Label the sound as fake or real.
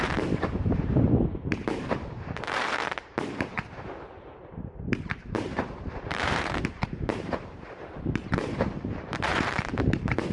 fake